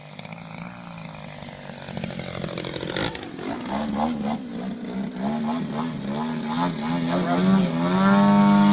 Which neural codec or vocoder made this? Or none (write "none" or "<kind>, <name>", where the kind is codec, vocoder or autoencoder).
none